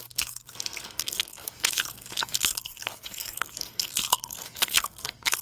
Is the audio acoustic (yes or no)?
no